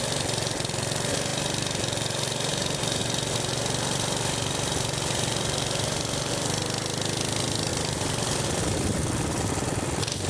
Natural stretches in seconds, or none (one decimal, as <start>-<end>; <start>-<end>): 0.0-3.0; 6.3-7.7; 9.5-10.3